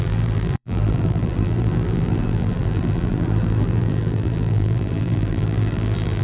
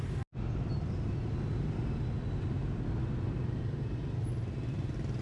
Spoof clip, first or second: first